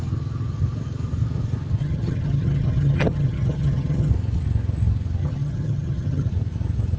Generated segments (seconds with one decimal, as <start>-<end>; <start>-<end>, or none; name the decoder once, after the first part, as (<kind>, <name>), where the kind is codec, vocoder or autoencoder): 1.8-4.1 (vocoder, HiFi-GAN); 5.2-6.3